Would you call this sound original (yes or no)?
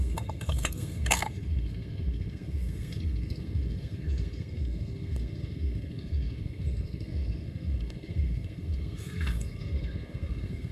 no